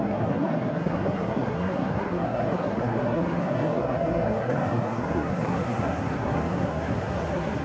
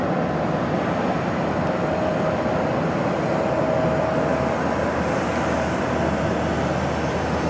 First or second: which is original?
second